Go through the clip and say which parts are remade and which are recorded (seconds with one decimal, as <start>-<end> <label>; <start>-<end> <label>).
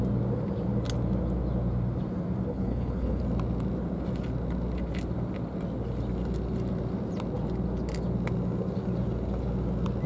0.0-2.5 recorded; 2.5-3.2 remade; 3.2-10.1 recorded